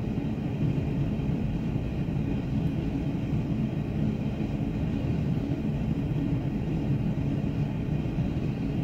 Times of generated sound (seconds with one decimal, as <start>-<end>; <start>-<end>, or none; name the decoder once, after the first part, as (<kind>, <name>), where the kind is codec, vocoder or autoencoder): 0.0-1.9 (vocoder, BigVGAN v2); 4.9-6.9; 8.1-8.8